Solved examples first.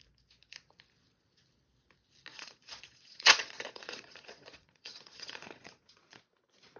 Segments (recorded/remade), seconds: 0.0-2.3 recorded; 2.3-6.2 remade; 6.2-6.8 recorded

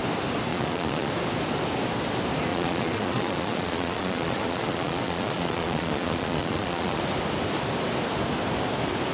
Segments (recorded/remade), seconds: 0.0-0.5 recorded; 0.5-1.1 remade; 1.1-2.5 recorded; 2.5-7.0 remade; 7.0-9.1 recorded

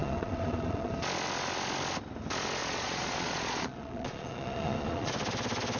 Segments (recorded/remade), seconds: 0.0-0.9 remade; 0.9-2.6 recorded; 2.6-5.1 remade; 5.1-5.8 recorded